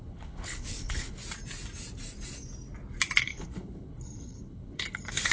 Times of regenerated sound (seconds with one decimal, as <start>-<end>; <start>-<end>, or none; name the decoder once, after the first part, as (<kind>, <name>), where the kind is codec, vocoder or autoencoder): 0.0-1.2 (codec, HILCodec); 3.2-5.3